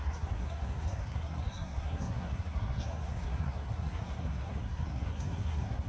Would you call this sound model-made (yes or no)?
yes